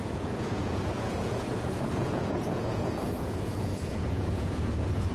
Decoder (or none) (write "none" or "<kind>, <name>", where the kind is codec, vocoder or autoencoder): vocoder, Vocos